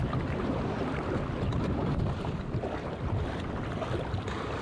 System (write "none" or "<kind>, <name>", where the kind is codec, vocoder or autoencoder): none